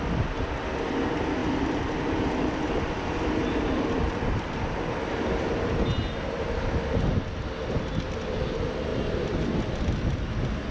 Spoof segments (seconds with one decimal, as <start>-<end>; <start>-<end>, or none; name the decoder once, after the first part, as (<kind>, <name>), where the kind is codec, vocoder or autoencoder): 1.4-6.6 (vocoder, BigVGAN v2); 8.9-9.7

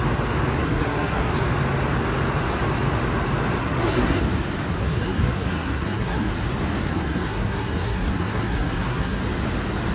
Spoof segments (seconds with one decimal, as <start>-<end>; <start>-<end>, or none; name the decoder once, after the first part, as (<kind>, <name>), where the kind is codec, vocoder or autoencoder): 0.6-1.3 (codec, SNAC); 3.6-4.2; 4.7-6.3; 6.9-9.2

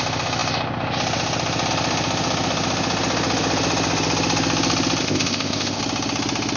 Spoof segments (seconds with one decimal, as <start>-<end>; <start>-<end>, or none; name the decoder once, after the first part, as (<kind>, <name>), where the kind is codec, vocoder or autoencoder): 5.0-5.8 (codec, ZipCodec)

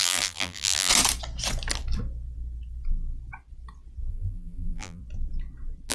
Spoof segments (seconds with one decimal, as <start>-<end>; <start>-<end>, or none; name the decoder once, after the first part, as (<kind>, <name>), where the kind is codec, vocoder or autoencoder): 0.0-0.9 (vocoder, BigVGAN v2); 4.1-5.0

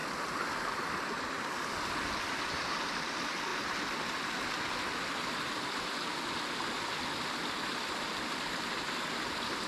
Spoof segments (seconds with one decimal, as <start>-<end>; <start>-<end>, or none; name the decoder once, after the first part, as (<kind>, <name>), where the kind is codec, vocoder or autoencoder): none

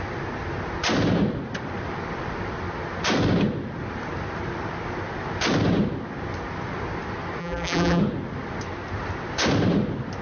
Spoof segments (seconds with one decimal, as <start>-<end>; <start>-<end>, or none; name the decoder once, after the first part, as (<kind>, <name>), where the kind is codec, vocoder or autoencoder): 7.4-8.0 (vocoder, BigVGAN v2)